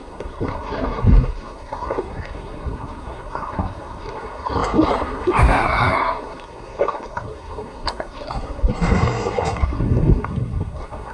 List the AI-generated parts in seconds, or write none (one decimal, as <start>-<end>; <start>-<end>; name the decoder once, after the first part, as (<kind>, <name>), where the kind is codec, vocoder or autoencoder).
0.0-11.1 (codec, SNAC)